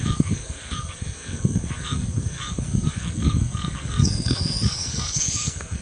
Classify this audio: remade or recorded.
remade